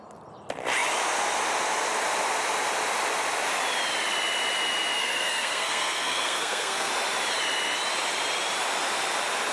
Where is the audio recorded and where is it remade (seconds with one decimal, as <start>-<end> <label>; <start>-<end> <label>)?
0.0-5.0 recorded; 5.0-6.9 remade; 6.9-9.5 recorded